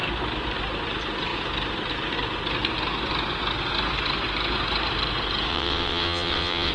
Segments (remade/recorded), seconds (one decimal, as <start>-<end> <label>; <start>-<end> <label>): 0.0-5.5 recorded; 5.5-6.7 remade